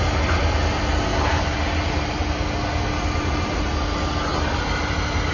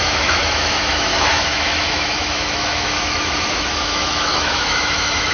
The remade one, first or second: second